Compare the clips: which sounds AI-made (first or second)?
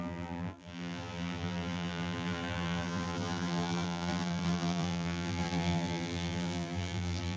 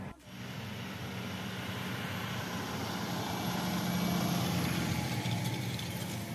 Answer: first